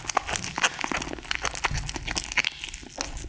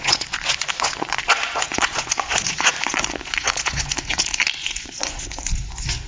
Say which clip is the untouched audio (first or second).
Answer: first